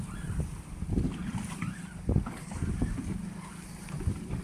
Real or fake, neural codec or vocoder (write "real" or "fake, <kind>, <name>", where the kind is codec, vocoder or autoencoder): real